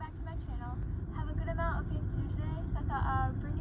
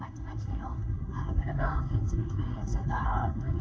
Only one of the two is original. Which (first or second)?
first